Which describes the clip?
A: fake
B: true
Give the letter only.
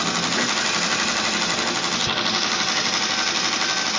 B